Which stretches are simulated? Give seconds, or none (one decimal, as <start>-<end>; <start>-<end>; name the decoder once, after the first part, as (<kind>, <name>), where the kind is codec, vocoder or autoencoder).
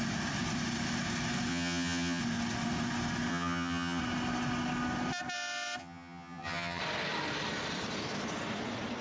1.5-2.2 (vocoder, HiFi-GAN); 3.3-4.0; 5.8-6.8